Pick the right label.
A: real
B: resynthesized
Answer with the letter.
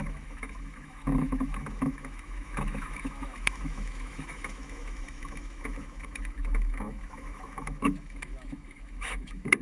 B